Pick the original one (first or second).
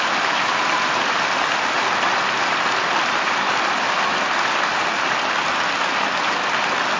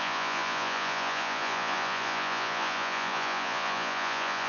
first